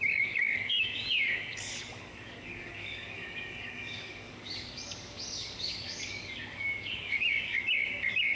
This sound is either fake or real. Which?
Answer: fake